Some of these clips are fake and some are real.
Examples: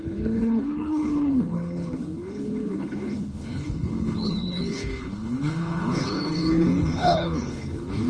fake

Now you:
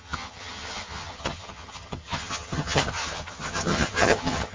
fake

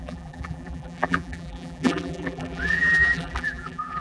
fake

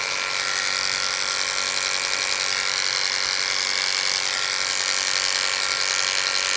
real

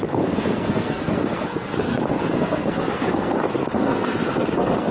fake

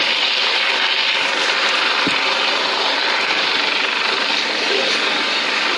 real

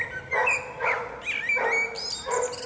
real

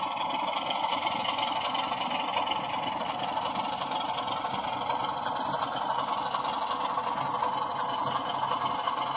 real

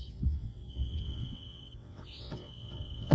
fake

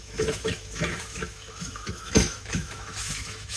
fake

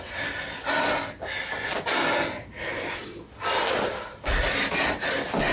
real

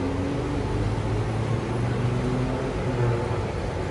real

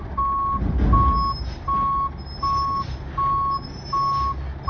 real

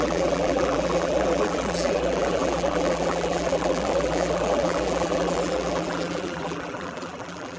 fake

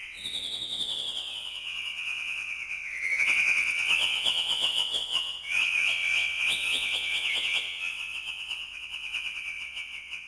fake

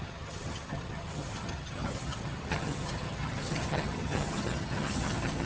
fake